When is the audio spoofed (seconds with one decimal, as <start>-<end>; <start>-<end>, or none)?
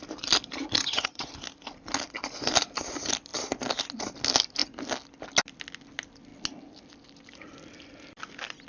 0.8-1.3